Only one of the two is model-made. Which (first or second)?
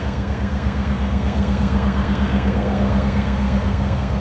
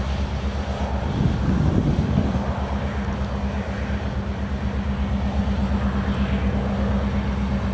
first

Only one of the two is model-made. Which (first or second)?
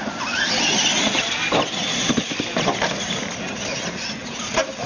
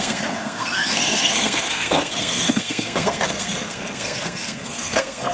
second